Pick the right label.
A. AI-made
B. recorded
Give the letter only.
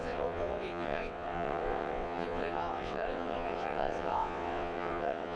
A